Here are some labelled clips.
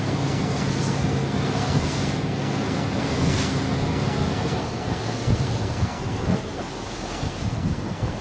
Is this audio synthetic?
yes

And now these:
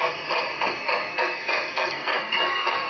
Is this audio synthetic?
yes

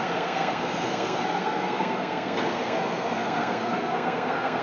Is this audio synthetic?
yes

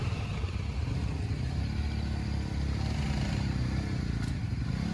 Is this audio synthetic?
no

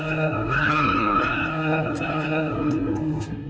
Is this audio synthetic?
yes